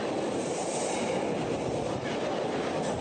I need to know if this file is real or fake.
real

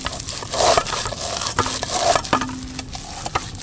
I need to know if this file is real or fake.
real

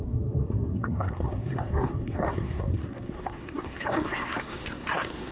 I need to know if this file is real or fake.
fake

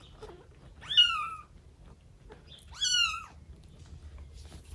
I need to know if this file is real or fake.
real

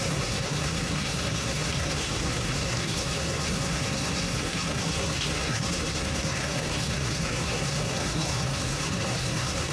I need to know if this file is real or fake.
fake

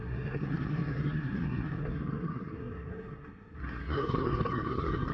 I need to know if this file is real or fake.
fake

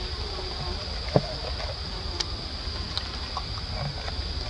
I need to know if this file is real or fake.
real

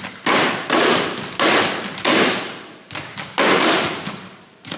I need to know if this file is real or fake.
real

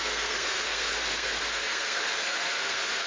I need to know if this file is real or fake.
fake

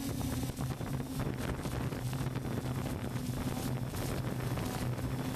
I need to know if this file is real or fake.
real